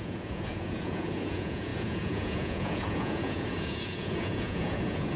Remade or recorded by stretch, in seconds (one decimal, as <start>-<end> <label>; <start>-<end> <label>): 0.0-5.2 remade